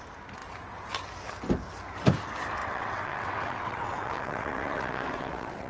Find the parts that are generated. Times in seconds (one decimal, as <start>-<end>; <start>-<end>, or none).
2.6-5.7

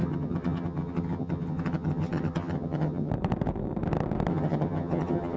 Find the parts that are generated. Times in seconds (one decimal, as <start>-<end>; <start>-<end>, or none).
0.0-3.1; 4.3-5.4

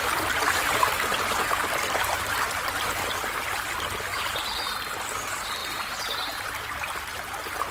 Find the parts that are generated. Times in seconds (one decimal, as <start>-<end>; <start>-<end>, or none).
none

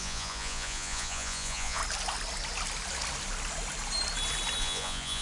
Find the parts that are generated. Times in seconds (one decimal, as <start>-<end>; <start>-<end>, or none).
0.0-1.8; 4.6-5.2

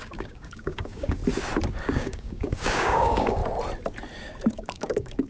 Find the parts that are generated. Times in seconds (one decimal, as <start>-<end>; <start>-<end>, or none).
0.0-1.2; 1.8-3.4; 4.5-5.3

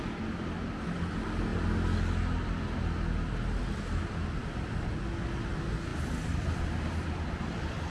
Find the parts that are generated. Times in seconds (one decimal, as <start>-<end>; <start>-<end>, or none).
4.4-4.9; 5.9-6.6

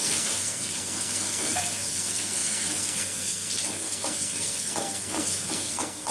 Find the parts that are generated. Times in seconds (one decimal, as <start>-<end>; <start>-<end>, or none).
0.0-6.1